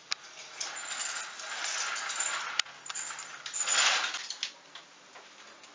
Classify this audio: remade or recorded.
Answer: recorded